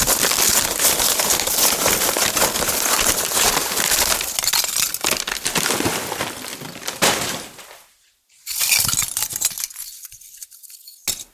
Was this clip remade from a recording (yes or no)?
no